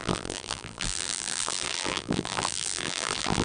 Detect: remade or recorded remade